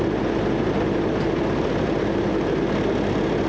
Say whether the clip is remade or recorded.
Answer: recorded